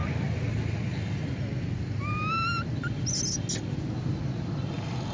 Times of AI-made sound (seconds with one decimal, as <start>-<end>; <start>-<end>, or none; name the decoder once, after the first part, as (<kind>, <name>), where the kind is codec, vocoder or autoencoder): none